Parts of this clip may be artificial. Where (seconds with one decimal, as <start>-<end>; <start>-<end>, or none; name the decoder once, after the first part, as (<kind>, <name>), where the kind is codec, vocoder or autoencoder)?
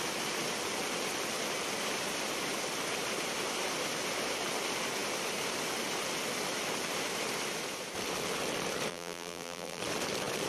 8.9-9.8 (vocoder, BigVGAN v2)